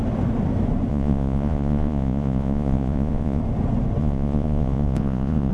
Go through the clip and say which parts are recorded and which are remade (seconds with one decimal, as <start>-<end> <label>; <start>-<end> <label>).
0.0-0.9 recorded; 0.9-3.4 remade; 3.4-4.0 recorded; 4.0-5.5 remade